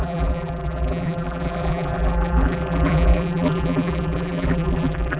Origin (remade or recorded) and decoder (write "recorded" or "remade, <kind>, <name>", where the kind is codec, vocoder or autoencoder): remade, vocoder, BigVGAN v2